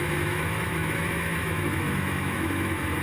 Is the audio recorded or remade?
remade